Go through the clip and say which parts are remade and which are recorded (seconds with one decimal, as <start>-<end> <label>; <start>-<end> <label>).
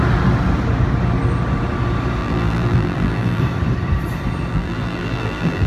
0.0-2.2 recorded; 2.2-3.4 remade; 3.4-4.5 recorded; 4.5-5.7 remade